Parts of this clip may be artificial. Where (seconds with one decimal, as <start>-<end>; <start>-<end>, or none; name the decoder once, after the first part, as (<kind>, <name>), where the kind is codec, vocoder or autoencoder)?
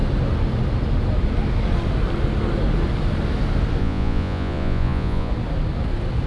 3.8-5.3 (vocoder, Vocos)